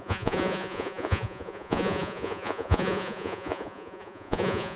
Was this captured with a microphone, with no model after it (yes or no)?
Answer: no